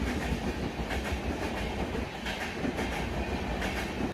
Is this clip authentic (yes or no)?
yes